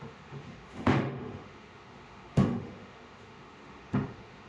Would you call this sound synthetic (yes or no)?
yes